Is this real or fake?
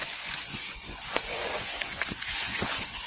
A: fake